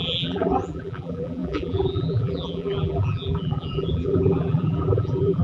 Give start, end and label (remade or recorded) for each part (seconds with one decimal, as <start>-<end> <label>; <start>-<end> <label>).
0.0-5.4 remade

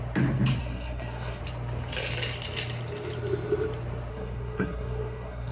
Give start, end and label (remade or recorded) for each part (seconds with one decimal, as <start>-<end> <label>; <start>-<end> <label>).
0.0-0.6 recorded; 0.6-1.4 remade; 1.4-4.1 recorded; 4.1-5.5 remade

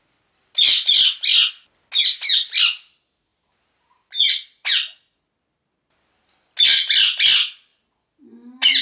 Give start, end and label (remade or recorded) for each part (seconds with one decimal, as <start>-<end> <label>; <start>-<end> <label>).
0.0-8.8 recorded

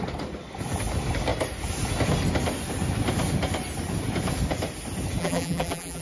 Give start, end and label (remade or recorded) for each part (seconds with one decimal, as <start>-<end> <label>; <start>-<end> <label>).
0.0-5.2 recorded; 5.2-6.0 remade

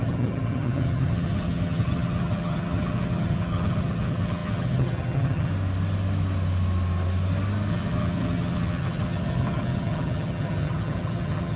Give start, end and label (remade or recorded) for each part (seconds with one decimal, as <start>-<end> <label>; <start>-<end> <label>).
0.0-5.5 remade; 5.5-7.7 recorded; 7.7-11.6 remade

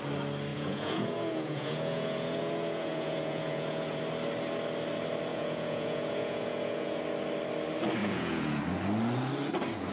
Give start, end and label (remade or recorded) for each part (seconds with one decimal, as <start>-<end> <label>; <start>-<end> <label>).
0.0-0.5 recorded; 0.5-4.0 remade; 4.0-5.3 recorded; 5.3-7.0 remade; 7.0-8.0 recorded; 8.0-8.6 remade; 8.6-9.9 recorded

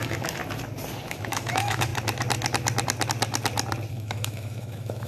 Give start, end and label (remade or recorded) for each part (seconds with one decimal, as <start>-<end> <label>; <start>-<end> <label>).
0.0-0.4 remade; 0.4-1.1 recorded; 1.1-1.9 remade; 1.9-3.9 recorded; 3.9-5.1 remade